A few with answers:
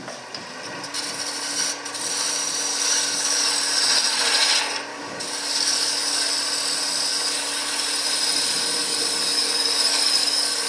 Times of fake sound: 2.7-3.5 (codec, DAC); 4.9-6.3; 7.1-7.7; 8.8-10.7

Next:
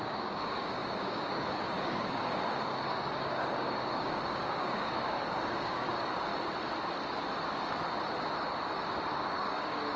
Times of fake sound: 0.0-6.3 (codec, DAC); 9.1-10.0

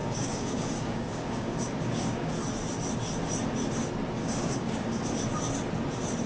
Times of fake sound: 0.0-2.3 (codec, DAC); 4.2-5.0